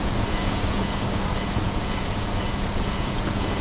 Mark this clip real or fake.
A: fake